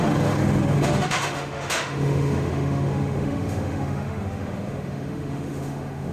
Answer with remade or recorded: remade